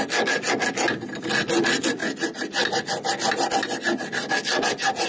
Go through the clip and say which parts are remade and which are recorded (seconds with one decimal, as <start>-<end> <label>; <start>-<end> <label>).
0.0-5.1 recorded